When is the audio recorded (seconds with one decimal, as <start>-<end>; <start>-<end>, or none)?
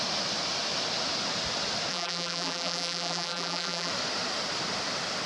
0.0-1.9; 3.9-5.3